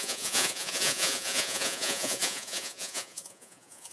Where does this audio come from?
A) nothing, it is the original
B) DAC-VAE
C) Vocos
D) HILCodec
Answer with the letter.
C